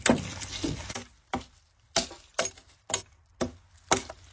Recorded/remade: recorded